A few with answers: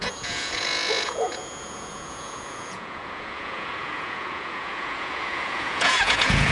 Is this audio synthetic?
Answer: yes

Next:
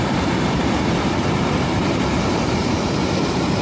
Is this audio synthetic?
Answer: yes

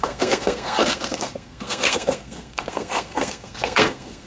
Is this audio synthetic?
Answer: yes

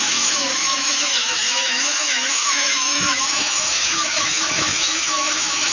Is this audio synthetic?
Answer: yes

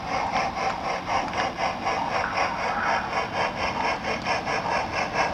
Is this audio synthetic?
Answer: no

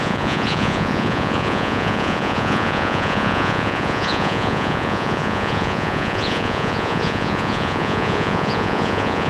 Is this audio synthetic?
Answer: yes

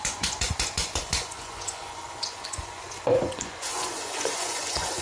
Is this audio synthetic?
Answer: yes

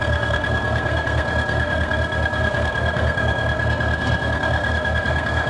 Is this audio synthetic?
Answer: yes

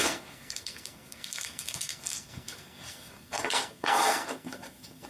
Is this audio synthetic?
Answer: yes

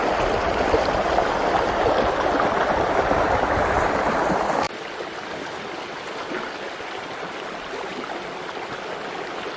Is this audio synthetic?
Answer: no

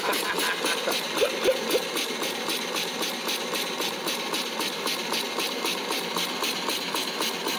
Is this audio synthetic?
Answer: no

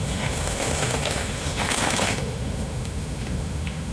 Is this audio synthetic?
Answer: yes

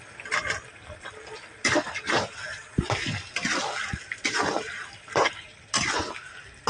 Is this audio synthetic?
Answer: no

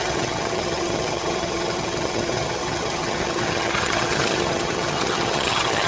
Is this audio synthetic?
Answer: yes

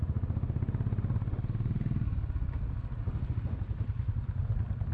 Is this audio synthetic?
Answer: no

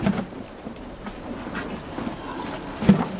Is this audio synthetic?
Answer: no